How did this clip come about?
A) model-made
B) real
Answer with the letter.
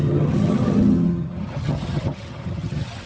A